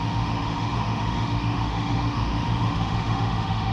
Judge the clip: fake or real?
fake